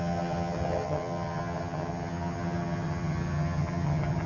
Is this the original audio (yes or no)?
no